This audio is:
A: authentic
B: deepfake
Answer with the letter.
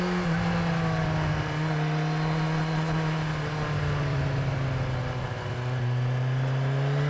A